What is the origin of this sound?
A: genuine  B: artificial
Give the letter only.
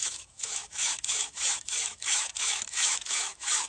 B